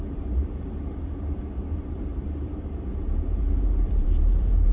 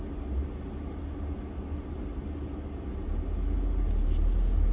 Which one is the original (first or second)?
second